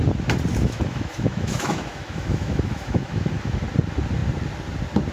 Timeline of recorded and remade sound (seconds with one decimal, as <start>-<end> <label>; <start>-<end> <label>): 0.0-0.5 recorded; 0.5-3.6 remade; 3.6-5.1 recorded